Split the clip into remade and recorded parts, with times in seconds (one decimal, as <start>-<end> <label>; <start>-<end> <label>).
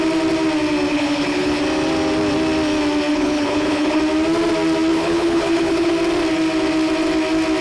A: 0.0-0.9 recorded; 0.9-1.6 remade; 1.6-3.1 recorded; 3.1-4.0 remade; 4.0-4.9 recorded; 4.9-5.9 remade; 5.9-7.6 recorded